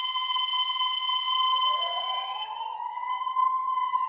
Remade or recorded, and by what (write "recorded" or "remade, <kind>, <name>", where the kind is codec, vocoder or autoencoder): remade, vocoder, HiFi-GAN